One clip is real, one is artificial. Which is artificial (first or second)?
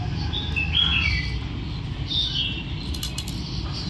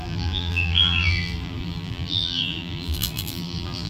second